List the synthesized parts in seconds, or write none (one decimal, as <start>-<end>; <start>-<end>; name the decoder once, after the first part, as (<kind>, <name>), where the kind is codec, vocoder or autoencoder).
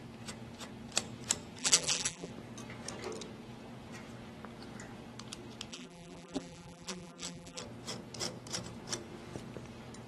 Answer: 1.6-2.3 (vocoder, BigVGAN v2); 5.7-7.6